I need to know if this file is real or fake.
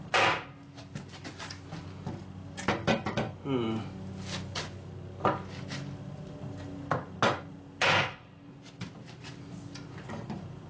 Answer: real